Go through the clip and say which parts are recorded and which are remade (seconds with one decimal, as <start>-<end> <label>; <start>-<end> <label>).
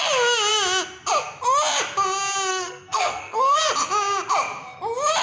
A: 0.0-2.5 recorded; 2.5-3.6 remade; 3.6-5.2 recorded